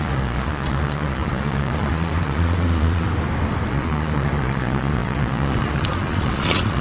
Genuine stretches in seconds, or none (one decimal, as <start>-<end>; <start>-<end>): 3.1-3.7